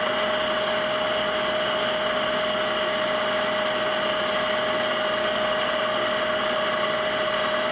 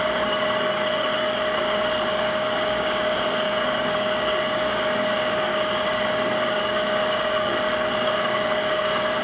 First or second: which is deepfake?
second